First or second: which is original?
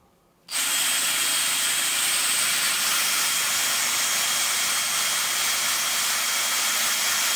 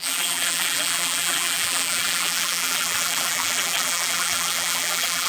first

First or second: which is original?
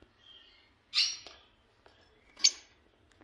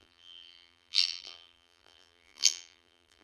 first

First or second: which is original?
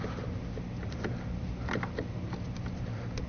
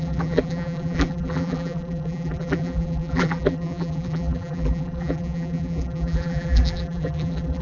first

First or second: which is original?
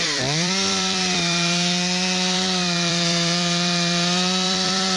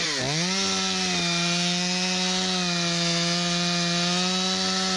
second